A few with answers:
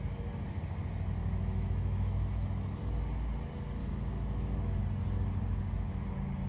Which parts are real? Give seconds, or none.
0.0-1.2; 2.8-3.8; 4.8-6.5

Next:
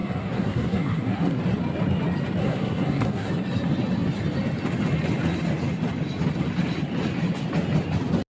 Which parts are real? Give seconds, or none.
1.4-2.4; 3.3-8.3

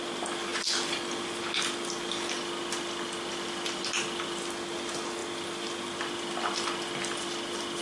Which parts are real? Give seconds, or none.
0.0-7.8

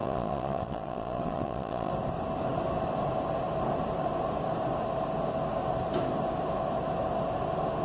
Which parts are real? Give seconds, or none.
1.9-7.8

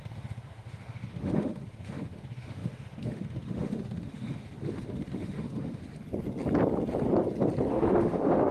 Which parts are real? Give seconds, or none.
5.8-7.7

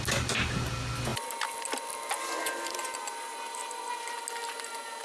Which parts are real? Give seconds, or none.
0.0-5.0

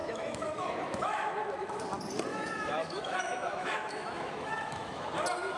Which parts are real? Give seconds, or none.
1.8-2.3; 5.1-5.6